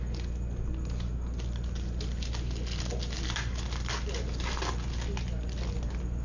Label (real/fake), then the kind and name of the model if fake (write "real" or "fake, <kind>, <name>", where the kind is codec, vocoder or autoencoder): real